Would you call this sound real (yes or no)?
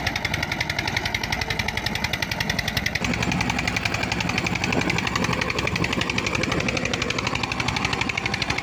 yes